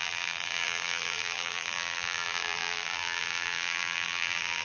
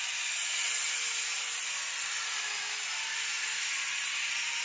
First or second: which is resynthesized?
first